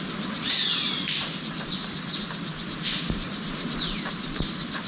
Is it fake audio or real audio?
real